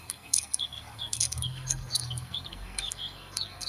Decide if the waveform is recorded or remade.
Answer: remade